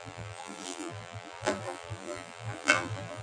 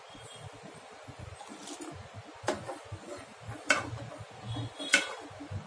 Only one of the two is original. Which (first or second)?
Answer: second